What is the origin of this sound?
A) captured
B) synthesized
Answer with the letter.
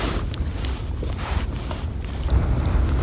A